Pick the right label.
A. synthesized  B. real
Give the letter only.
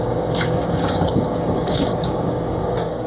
A